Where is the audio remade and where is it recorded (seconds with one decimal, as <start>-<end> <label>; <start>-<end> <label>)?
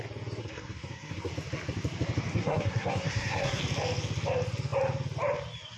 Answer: 0.0-0.4 recorded; 0.4-1.3 remade; 1.3-2.4 recorded; 2.4-3.6 remade; 3.6-5.8 recorded